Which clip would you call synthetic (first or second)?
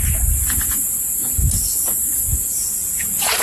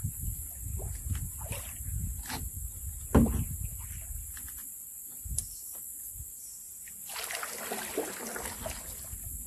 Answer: first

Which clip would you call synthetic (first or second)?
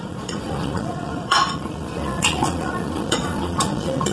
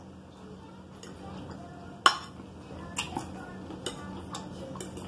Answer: first